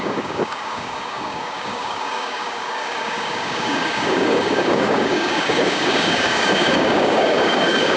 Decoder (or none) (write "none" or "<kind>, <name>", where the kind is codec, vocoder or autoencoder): codec, DAC